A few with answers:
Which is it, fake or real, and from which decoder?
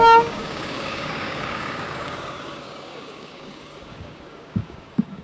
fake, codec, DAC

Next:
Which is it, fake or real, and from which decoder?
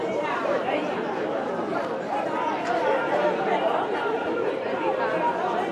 fake, vocoder, BigVGAN v2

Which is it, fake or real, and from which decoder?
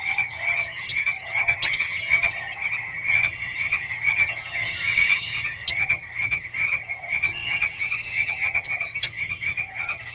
fake, vocoder, HiFi-GAN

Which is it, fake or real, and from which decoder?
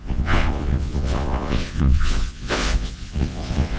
fake, vocoder, Vocos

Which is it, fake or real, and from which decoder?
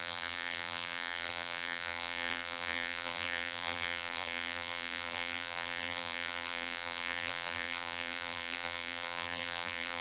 fake, vocoder, BigVGAN v2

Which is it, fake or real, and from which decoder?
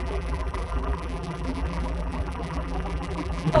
fake, vocoder, BigVGAN v2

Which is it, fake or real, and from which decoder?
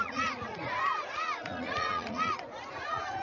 fake, vocoder, Vocos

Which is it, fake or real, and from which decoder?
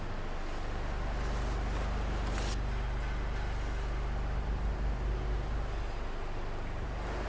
real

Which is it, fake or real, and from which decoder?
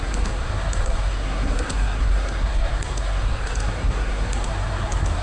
fake, codec, SNAC